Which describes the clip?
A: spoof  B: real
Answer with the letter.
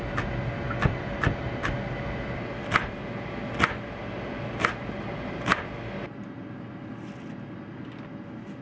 B